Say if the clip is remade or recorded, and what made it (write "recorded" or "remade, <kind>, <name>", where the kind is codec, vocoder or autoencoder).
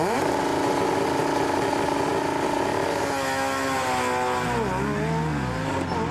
recorded